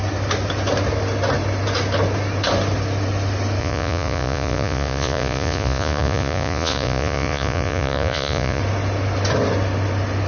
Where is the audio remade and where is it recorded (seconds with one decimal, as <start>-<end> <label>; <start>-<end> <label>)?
0.0-3.6 recorded; 3.6-8.6 remade; 8.6-10.3 recorded